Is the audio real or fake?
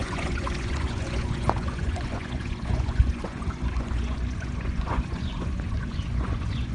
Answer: fake